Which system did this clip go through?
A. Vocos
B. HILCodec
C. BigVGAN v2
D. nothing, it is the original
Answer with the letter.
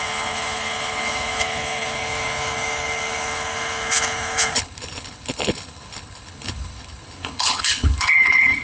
B